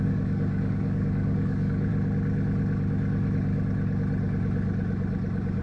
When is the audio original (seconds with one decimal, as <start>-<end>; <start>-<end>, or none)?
1.9-5.6